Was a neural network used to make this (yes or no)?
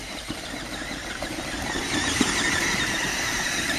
yes